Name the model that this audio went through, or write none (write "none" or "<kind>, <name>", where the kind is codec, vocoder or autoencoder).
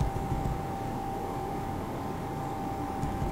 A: codec, DAC